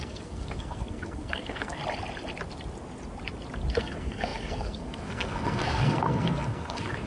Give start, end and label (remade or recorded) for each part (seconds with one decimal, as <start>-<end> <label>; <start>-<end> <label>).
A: 0.0-1.8 remade; 1.8-3.7 recorded; 3.7-7.1 remade